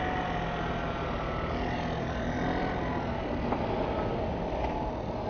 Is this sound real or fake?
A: real